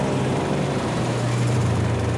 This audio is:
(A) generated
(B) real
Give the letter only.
A